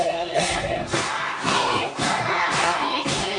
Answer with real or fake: fake